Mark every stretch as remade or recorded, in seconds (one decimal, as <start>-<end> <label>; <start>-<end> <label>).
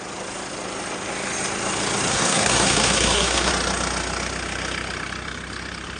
0.0-2.1 recorded; 2.1-3.5 remade; 3.5-6.0 recorded